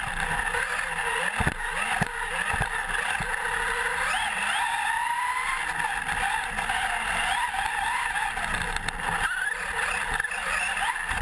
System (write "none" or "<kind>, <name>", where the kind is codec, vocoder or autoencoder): none